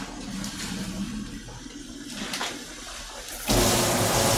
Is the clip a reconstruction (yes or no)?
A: no